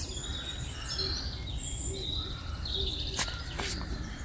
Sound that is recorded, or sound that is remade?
recorded